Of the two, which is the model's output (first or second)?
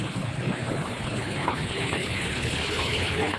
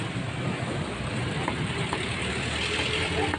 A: first